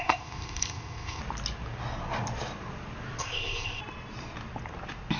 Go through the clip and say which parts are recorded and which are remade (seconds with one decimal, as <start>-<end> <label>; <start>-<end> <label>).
0.0-1.2 remade; 1.2-3.2 recorded; 3.2-3.8 remade; 3.8-5.2 recorded